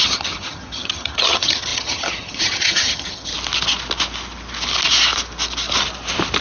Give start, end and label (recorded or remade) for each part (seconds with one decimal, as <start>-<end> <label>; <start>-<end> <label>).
0.0-3.3 remade; 3.3-6.4 recorded